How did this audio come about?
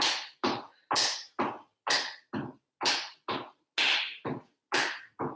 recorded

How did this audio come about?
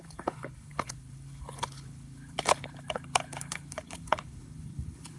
remade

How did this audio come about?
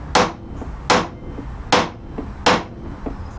recorded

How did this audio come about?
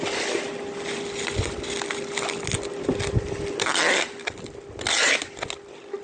recorded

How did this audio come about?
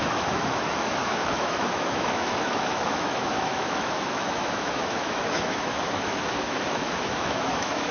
remade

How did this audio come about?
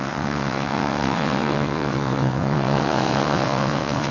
remade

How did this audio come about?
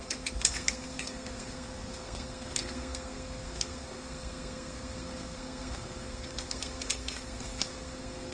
remade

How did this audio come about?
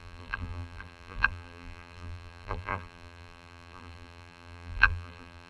remade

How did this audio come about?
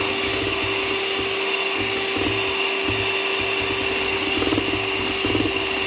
recorded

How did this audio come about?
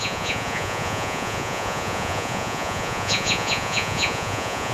remade